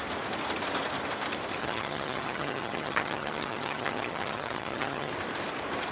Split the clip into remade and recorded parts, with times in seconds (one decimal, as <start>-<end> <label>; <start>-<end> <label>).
0.0-1.6 recorded; 1.6-5.1 remade; 5.1-5.9 recorded